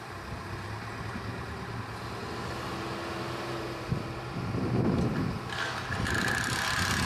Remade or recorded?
recorded